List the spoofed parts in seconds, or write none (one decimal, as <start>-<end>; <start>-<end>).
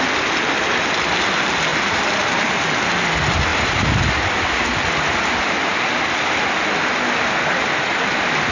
1.7-2.6